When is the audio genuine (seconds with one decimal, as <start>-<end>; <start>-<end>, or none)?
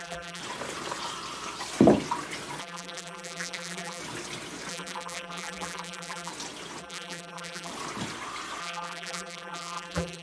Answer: 0.4-2.6; 4.0-4.7; 6.3-6.8; 7.7-8.6